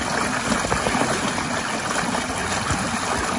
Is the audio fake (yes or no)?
no